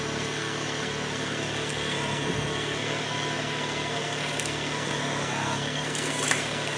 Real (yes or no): no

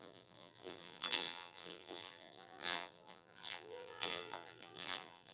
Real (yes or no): no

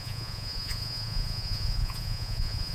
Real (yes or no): no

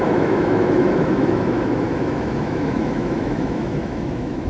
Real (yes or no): no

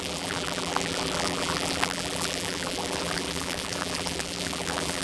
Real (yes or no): no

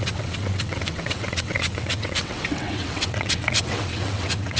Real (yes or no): no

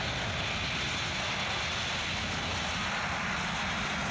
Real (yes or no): yes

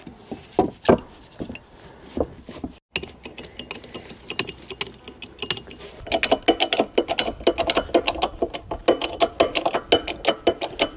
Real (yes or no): yes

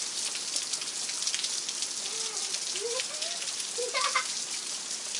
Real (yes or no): yes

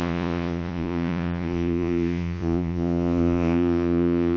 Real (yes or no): no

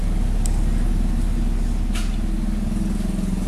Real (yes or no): yes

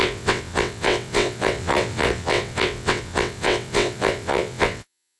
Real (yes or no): no